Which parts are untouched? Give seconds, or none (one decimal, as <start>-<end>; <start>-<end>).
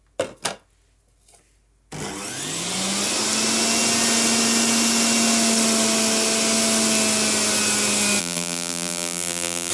0.0-8.2